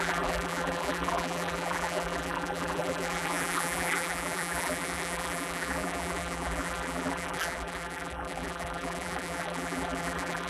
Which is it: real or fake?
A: fake